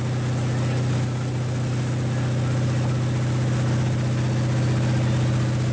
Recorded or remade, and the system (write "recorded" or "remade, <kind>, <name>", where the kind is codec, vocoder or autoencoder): recorded